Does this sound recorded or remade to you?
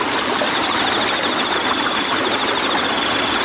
recorded